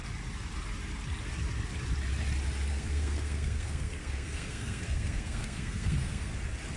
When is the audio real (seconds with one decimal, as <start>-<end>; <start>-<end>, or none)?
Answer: 0.0-2.7; 6.3-6.8